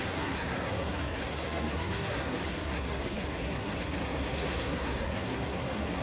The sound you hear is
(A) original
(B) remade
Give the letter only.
B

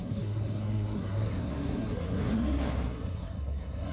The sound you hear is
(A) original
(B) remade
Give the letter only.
B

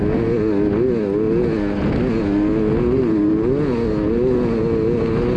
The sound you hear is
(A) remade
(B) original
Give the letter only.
B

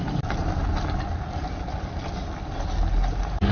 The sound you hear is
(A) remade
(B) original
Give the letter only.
B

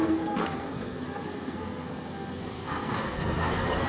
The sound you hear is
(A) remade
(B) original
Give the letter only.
A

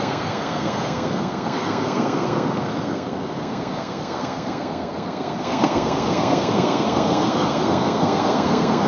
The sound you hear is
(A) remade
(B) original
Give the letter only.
A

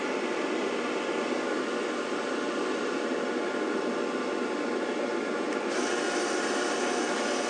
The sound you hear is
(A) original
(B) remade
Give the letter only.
A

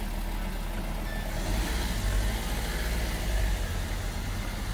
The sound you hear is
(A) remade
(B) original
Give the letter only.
B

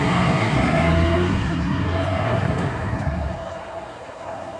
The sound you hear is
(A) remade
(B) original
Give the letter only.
A